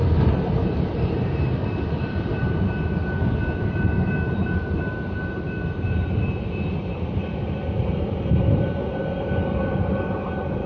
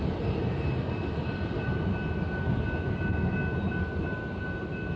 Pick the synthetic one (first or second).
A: first